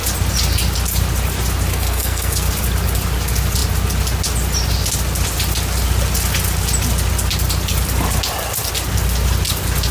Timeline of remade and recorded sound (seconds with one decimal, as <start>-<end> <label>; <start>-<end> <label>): 0.0-1.7 recorded; 1.7-2.5 remade; 2.5-9.9 recorded